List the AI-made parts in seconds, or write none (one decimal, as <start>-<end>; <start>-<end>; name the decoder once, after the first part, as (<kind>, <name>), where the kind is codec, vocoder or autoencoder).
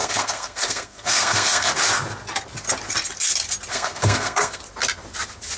0.0-1.7 (codec, SNAC); 3.7-4.6